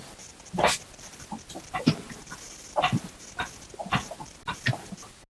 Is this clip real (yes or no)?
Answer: yes